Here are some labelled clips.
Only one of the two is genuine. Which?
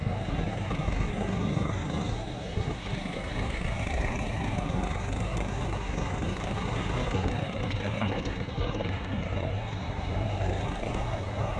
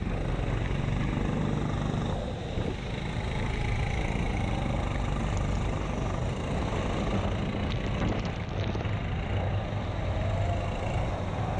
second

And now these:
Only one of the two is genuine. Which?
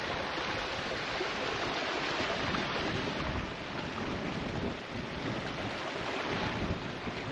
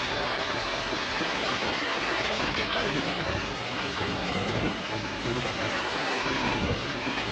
first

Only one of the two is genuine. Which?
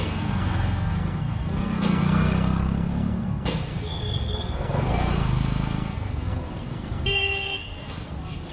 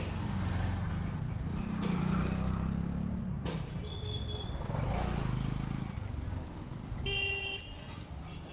second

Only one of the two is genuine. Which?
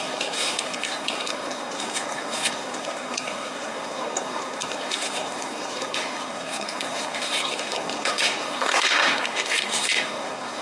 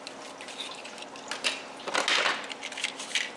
second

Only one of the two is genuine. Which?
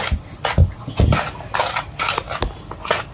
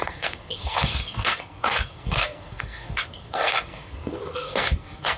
first